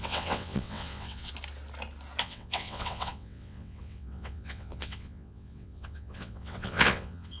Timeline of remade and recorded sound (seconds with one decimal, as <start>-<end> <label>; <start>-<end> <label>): 0.0-1.3 remade; 1.3-2.2 recorded; 2.2-7.4 remade

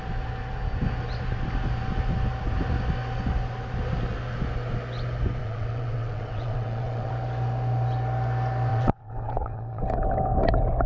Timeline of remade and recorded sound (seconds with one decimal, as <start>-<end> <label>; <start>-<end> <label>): 0.0-5.4 recorded; 5.4-7.1 remade; 7.1-8.7 recorded; 8.7-9.8 remade; 9.8-10.9 recorded